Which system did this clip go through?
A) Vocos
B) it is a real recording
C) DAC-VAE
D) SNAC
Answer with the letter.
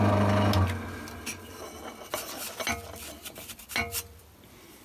B